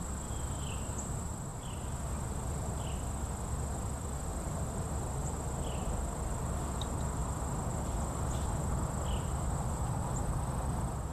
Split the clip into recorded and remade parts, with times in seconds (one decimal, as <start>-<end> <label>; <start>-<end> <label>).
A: 0.0-1.5 recorded; 1.5-2.1 remade; 2.1-4.3 recorded; 4.3-4.9 remade; 4.9-7.2 recorded; 7.2-10.4 remade; 10.4-11.1 recorded